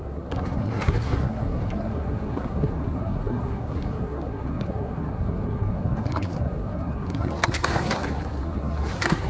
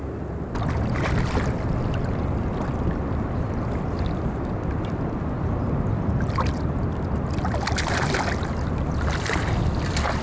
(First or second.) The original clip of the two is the second